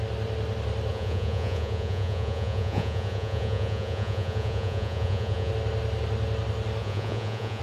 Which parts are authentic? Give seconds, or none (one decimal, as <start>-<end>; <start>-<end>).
0.0-0.9; 5.5-6.8